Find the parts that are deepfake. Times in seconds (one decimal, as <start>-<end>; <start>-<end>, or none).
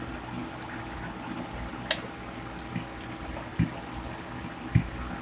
none